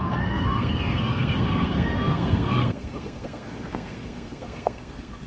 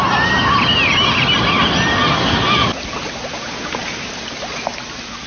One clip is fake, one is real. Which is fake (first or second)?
first